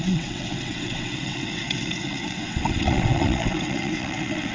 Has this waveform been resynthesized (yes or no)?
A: yes